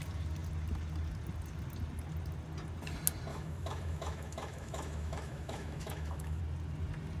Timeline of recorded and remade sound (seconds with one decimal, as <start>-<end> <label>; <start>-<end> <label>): 0.0-3.3 recorded; 3.3-6.4 remade; 6.4-7.2 recorded